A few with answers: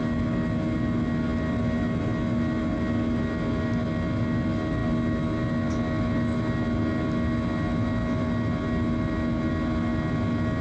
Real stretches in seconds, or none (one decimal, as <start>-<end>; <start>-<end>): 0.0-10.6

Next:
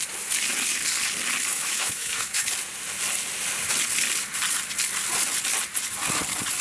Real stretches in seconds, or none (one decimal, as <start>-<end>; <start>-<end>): 0.0-1.5; 2.5-6.6

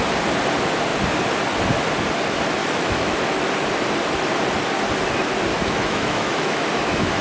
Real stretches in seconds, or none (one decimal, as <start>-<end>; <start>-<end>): 0.0-2.6; 3.2-5.5

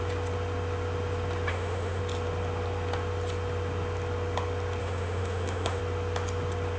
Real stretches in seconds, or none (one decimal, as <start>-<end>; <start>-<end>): 0.0-1.5; 2.0-4.8; 5.8-6.8

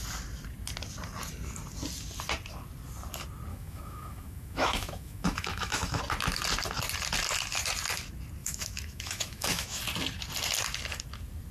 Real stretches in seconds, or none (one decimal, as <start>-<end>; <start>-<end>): 0.0-3.5; 6.0-8.4; 9.8-11.5